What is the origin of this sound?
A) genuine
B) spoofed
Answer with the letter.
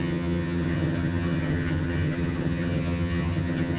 B